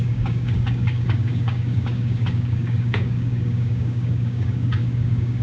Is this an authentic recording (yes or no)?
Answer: no